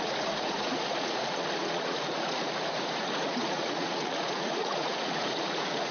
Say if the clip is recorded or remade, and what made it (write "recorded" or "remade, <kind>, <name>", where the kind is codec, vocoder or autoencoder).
remade, vocoder, Vocos